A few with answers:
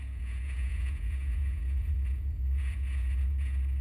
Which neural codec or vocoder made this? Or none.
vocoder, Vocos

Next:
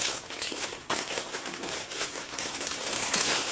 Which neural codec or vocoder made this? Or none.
codec, SNAC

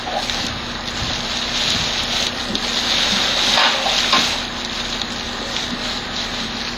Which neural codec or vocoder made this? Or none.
none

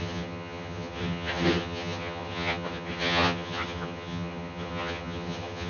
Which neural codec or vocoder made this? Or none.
vocoder, HiFi-GAN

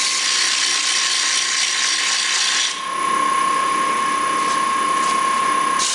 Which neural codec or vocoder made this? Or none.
none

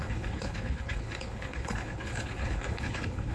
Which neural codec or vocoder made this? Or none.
codec, HILCodec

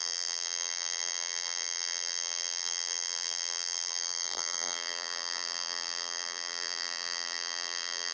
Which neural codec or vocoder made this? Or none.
vocoder, BigVGAN v2